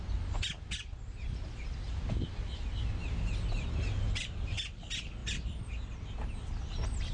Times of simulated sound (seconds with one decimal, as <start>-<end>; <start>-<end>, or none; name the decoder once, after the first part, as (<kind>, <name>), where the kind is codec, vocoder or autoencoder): none